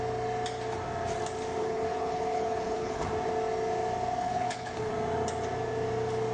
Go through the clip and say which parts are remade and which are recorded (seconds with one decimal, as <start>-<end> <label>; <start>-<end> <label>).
0.0-1.6 recorded; 1.6-3.1 remade; 3.1-4.2 recorded; 4.2-4.9 remade; 4.9-6.3 recorded